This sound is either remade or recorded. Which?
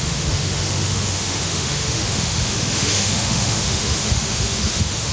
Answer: remade